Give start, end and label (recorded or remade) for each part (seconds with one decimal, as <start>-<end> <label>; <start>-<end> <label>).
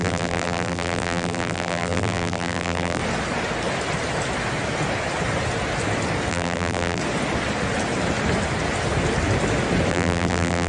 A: 0.0-3.0 remade; 3.0-6.3 recorded; 6.3-7.0 remade; 7.0-9.9 recorded; 9.9-10.7 remade